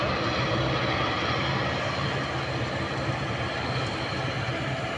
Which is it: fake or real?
real